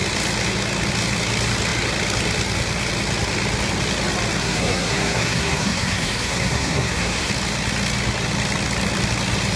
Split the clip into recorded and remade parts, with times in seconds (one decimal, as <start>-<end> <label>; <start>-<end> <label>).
0.0-4.4 recorded; 4.4-7.3 remade; 7.3-9.6 recorded